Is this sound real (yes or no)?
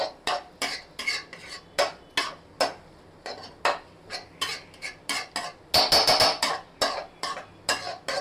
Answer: yes